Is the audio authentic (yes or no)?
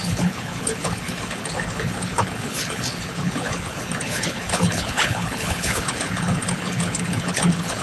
no